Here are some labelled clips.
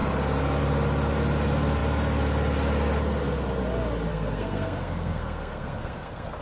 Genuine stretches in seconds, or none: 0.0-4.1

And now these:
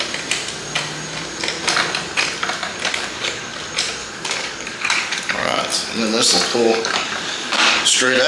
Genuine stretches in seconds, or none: 0.0-2.9; 3.6-4.0; 5.6-6.5

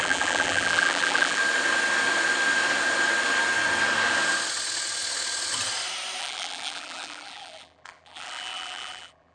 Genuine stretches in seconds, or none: 1.4-6.2

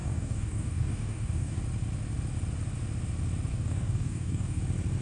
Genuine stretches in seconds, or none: 1.6-3.5; 4.6-5.0

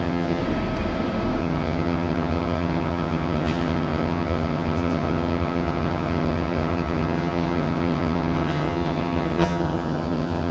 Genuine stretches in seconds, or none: 0.4-1.4

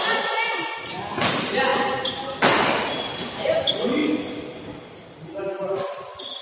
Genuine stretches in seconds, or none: 0.0-6.4

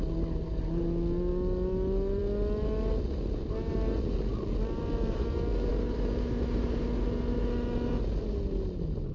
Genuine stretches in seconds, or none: 0.0-9.1

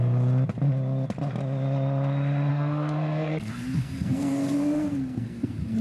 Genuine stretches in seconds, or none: 0.0-2.5